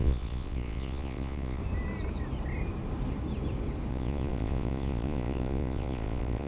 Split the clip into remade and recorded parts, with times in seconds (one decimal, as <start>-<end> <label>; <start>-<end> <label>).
0.0-1.6 remade; 1.6-3.9 recorded; 3.9-6.5 remade

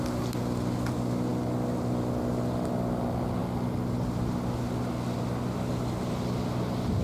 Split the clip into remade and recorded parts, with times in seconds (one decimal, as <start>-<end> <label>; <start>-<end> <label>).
0.0-7.0 recorded

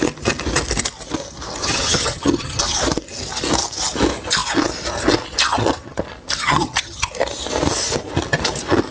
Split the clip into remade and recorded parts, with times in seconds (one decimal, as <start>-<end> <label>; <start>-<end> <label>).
0.0-1.6 recorded; 1.6-2.6 remade; 2.6-5.5 recorded; 5.5-6.0 remade; 6.0-6.4 recorded; 6.4-7.1 remade; 7.1-8.9 recorded

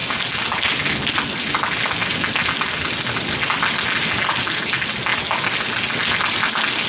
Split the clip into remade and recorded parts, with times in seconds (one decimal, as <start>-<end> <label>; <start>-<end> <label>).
0.0-6.9 recorded

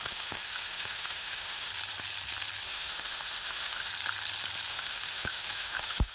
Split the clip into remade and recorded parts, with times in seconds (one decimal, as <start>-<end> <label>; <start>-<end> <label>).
0.0-1.7 remade; 1.7-2.6 recorded; 2.6-3.9 remade; 3.9-4.7 recorded; 4.7-6.1 remade